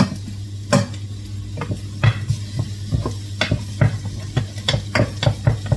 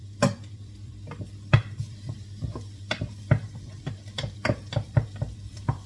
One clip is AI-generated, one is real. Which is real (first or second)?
first